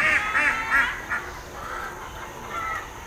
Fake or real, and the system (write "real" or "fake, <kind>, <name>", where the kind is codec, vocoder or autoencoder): real